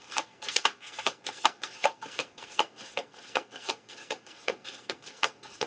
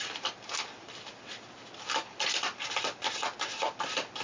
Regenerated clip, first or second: first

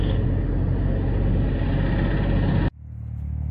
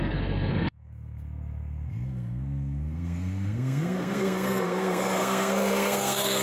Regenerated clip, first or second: second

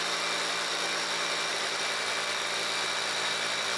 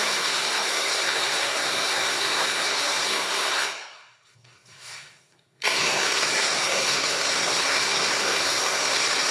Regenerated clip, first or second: second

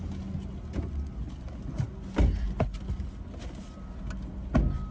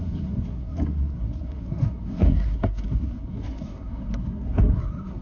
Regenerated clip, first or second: second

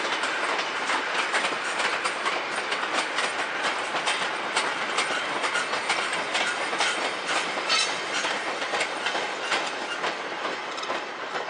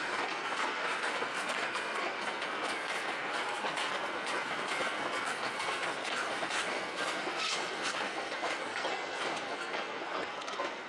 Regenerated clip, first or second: second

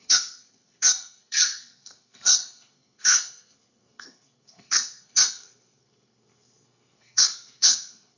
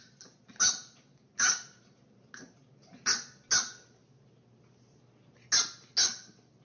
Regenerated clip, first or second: first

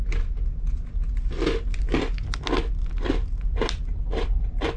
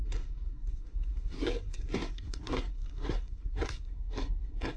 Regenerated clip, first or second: second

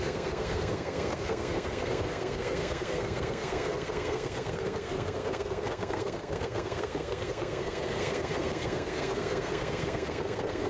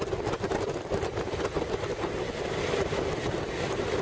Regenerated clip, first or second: first